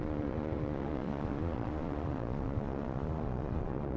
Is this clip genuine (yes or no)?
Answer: no